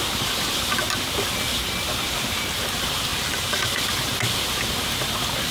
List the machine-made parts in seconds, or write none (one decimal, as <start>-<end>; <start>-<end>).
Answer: 3.1-3.8